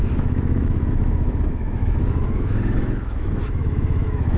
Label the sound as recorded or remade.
remade